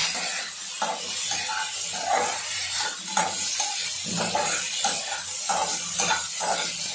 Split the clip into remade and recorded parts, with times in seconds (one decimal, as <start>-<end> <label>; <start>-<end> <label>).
0.0-6.9 recorded